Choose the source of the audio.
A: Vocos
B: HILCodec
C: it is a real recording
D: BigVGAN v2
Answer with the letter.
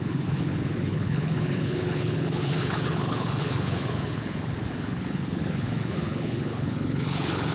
B